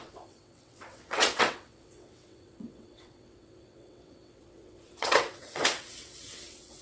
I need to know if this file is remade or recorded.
remade